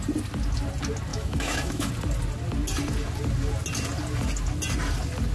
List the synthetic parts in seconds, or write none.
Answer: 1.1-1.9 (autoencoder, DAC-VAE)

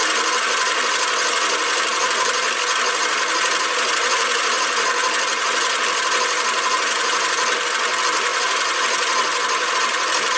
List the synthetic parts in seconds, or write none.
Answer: 0.0-10.4 (vocoder, BigVGAN v2)